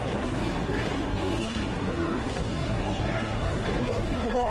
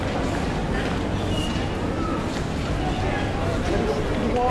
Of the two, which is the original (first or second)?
second